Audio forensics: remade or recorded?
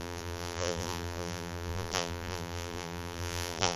remade